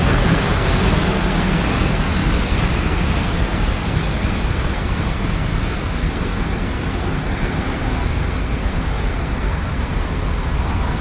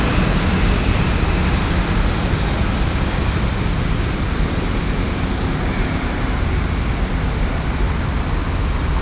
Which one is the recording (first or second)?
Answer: second